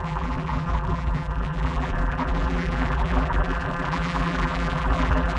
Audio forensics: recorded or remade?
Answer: remade